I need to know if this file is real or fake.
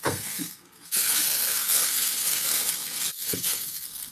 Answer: fake